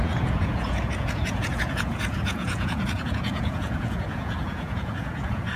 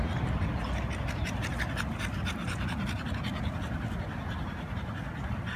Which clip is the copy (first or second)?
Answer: first